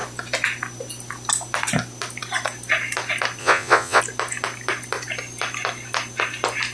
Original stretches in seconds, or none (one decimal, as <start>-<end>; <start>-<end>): 0.0-3.4; 4.0-6.7